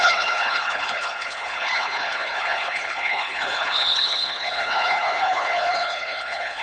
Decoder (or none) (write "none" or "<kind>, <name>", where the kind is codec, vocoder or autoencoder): codec, HILCodec